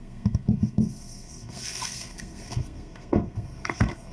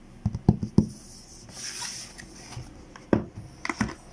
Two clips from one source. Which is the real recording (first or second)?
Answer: second